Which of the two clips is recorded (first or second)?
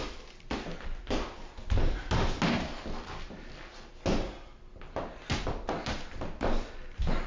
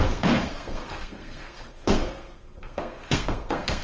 first